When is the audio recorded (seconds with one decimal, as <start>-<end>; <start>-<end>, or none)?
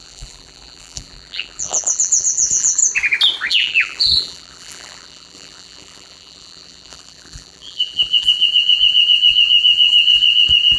2.8-3.5